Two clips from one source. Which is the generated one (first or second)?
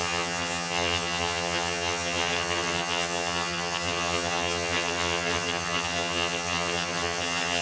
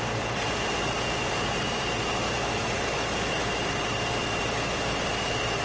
first